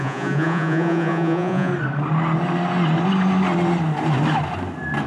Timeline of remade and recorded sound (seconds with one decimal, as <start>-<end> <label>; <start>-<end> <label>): 0.0-1.7 remade; 1.7-5.1 recorded